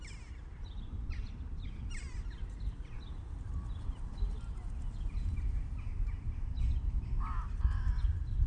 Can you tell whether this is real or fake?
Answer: real